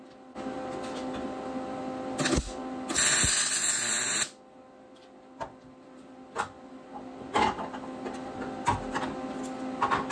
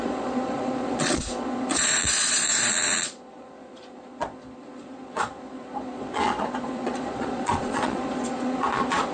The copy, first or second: second